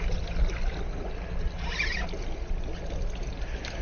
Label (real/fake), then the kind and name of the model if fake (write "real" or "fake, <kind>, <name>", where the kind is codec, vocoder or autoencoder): real